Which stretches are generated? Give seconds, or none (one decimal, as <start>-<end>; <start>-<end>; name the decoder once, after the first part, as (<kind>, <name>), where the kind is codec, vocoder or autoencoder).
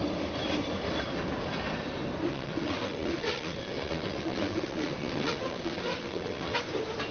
2.3-6.6 (vocoder, WaveNeXt)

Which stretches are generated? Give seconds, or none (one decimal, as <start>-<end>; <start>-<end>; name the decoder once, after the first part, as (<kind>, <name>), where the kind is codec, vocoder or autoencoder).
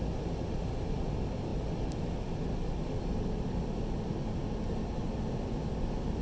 none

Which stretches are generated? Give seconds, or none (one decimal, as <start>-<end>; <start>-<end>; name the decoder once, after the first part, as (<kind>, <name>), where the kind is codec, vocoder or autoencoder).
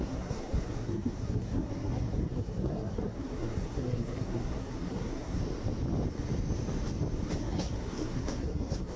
0.0-5.4 (codec, SNAC); 7.4-9.0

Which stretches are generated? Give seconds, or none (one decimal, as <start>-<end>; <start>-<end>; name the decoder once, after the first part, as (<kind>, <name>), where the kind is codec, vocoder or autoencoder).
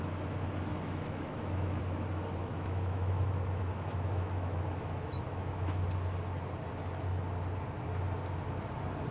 0.7-1.8 (autoencoder, DAC-VAE); 2.4-5.8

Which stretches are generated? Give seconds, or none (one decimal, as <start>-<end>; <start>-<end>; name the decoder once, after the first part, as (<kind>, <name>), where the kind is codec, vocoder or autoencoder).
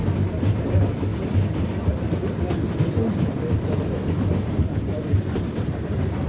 none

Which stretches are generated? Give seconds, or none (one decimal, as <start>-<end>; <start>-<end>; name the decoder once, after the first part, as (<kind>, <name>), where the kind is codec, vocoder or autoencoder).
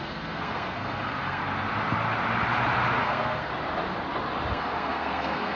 0.0-1.4 (codec, SNAC); 3.0-3.5; 4.5-5.5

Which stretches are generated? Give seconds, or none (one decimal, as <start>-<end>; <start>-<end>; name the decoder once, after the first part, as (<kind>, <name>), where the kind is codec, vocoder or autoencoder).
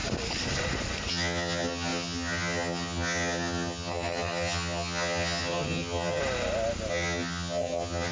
1.1-6.2 (vocoder, HiFi-GAN); 6.9-8.1